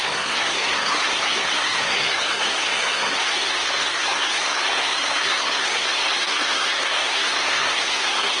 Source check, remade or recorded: remade